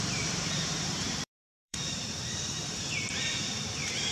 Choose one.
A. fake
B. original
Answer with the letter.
A